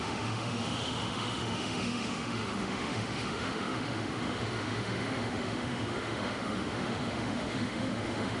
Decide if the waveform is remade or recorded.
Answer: remade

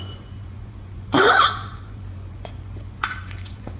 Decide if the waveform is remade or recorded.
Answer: remade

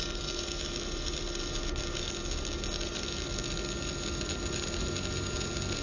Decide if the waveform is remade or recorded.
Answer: recorded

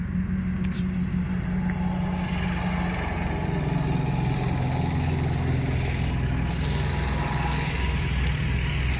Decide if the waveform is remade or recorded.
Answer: recorded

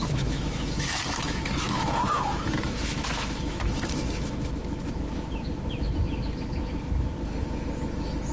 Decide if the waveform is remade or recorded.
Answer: remade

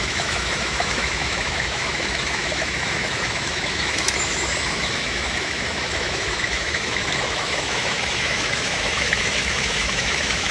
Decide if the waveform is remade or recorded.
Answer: remade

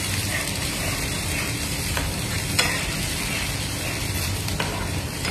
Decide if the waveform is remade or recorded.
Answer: remade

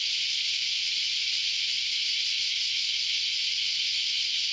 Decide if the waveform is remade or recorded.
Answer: recorded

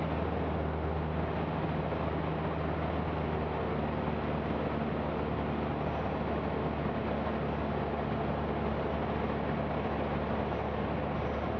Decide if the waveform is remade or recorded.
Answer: recorded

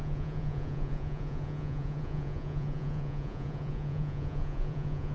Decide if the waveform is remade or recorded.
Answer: remade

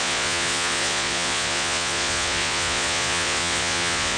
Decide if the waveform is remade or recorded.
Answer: remade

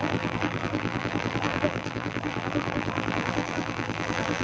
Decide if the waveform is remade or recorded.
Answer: remade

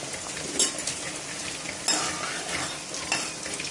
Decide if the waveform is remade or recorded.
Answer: recorded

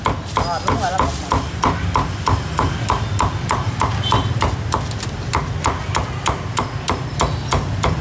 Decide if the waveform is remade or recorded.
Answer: recorded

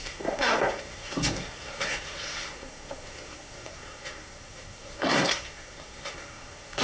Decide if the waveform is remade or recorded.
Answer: remade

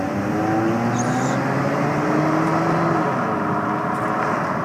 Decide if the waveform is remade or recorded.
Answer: recorded